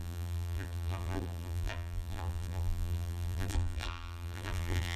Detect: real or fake fake